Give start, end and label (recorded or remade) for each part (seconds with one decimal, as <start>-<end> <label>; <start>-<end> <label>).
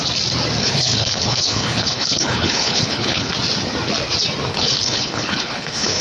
0.0-0.6 recorded; 0.6-3.3 remade; 3.3-4.5 recorded; 4.5-6.0 remade